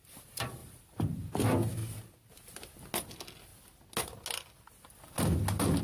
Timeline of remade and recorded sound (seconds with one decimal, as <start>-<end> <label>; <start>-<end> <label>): 0.0-5.8 recorded